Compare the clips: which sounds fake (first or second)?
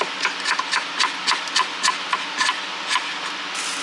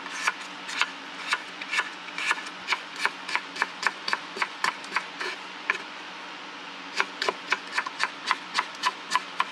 second